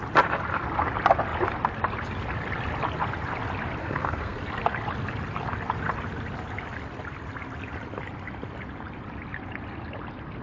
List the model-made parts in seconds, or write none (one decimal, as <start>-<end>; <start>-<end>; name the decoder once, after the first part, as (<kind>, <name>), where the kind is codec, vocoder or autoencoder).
3.8-4.4 (codec, SNAC)